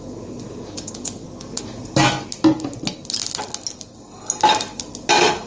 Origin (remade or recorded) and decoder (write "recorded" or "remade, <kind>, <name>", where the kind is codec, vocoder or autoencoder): recorded